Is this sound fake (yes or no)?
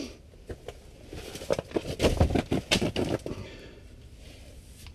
no